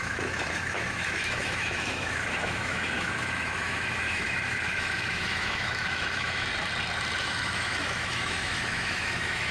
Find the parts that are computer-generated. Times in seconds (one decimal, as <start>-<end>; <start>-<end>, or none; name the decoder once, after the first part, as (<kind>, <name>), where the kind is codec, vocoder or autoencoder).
0.0-6.5 (autoencoder, DAC-VAE); 7.2-9.5